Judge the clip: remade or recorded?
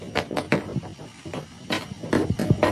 remade